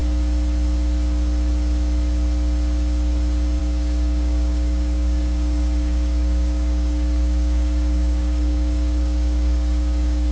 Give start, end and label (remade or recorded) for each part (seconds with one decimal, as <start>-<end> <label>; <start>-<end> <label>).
0.0-3.6 recorded; 3.6-10.3 remade